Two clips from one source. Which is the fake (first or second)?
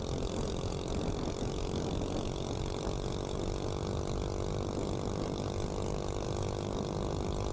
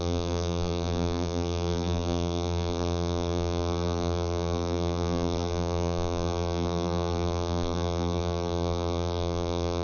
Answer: second